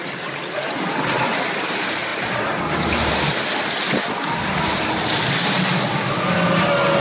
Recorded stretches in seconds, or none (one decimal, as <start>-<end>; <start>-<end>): 0.0-7.0

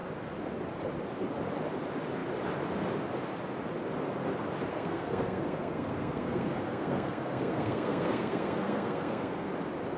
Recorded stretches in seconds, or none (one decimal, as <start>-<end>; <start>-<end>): 0.0-4.7; 9.5-10.0

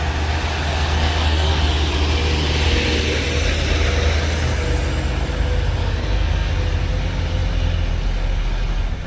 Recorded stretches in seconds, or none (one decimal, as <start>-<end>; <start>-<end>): 0.0-0.7; 1.7-5.8; 6.5-9.1

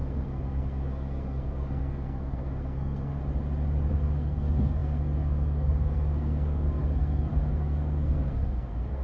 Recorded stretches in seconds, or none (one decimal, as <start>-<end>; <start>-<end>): 3.2-3.9

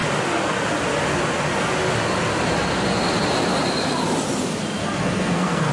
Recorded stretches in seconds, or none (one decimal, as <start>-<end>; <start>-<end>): 0.0-4.8

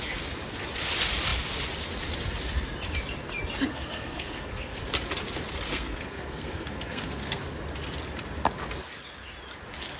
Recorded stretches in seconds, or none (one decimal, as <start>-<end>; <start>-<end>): 0.0-3.7; 4.8-5.7; 7.4-10.0